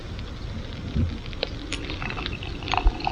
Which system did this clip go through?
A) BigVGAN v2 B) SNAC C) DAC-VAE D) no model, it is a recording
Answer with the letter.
D